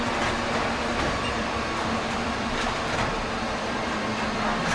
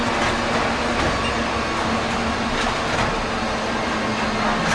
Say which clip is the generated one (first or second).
first